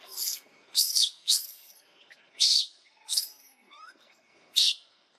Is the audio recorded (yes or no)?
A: no